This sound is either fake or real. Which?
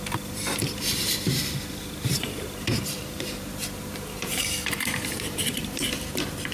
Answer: fake